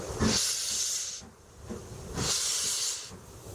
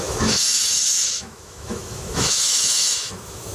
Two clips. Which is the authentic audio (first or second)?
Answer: first